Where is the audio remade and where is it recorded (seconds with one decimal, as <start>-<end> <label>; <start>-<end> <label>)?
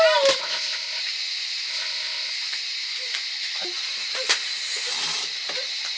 0.0-0.4 recorded; 0.4-1.0 remade; 1.0-1.7 recorded; 1.7-2.3 remade; 2.3-6.0 recorded